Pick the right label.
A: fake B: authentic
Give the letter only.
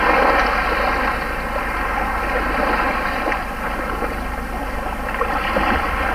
B